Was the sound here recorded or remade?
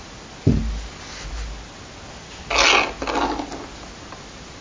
recorded